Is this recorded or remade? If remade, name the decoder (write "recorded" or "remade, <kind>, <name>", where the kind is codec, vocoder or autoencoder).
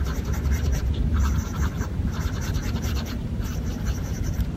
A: remade, vocoder, BigVGAN v2